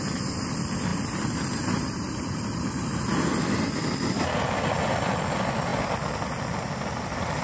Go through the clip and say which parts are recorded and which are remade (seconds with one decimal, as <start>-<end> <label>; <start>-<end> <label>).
0.0-0.9 recorded; 0.9-3.1 remade; 3.1-7.4 recorded